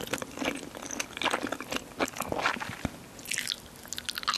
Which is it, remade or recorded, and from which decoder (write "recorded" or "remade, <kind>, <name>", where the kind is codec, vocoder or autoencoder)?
recorded